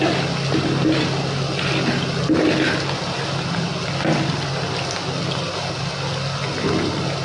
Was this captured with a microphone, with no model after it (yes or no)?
yes